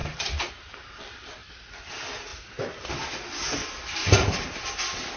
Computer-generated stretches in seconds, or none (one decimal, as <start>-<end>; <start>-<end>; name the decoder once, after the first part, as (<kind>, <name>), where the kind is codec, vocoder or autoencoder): 0.0-0.5 (vocoder, BigVGAN v2); 1.4-1.9; 2.3-2.9; 4.0-4.6